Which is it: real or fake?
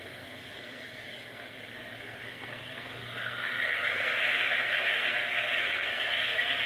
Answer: fake